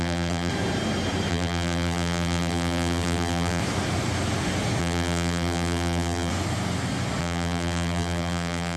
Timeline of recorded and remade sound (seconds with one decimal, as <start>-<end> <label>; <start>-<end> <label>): 0.0-0.5 remade; 0.5-1.3 recorded; 1.3-3.6 remade; 3.6-4.8 recorded; 4.8-6.3 remade; 6.3-7.2 recorded; 7.2-8.8 remade